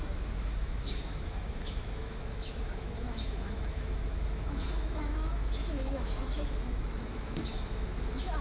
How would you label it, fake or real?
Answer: fake